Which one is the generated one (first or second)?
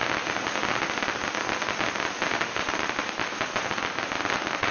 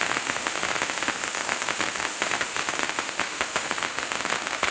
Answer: second